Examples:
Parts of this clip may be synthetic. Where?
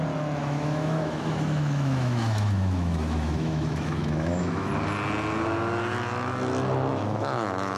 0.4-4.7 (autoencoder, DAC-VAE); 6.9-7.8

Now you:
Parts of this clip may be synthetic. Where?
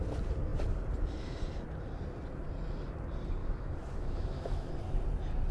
3.4-4.7 (autoencoder, DAC-VAE)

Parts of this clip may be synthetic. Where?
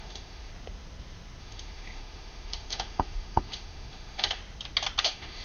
0.0-0.5 (autoencoder, DAC-VAE); 1.4-4.4; 5.0-5.4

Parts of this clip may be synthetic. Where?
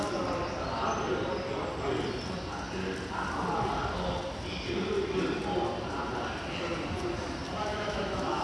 7.7-8.4 (autoencoder, DAC-VAE)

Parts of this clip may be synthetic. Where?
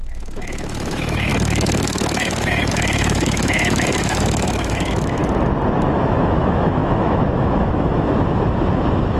0.0-5.2 (autoencoder, DAC-VAE); 5.8-9.2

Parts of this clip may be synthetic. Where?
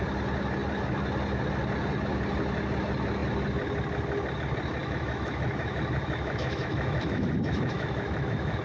4.8-8.6 (autoencoder, DAC-VAE)